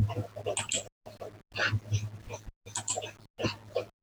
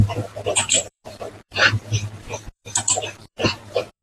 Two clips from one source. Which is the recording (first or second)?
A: first